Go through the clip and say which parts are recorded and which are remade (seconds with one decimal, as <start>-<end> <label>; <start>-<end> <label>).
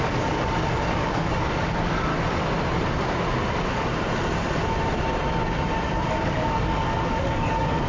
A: 0.0-2.1 remade; 2.1-3.5 recorded; 3.5-3.9 remade; 3.9-6.1 recorded; 6.1-7.9 remade